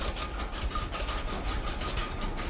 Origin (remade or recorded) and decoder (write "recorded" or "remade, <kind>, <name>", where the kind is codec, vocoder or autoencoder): recorded